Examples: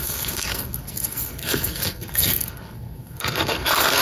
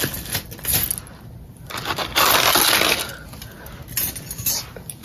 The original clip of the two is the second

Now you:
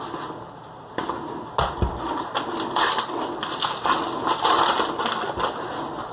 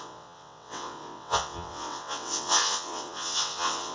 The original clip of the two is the first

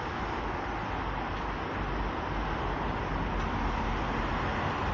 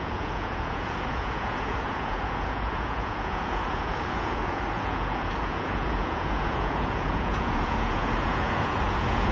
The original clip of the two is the first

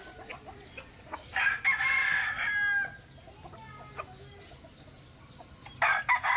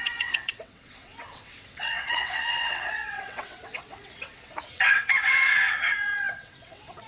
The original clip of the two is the first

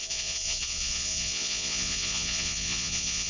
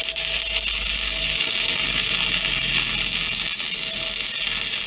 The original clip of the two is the second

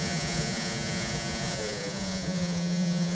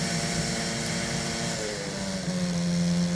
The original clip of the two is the second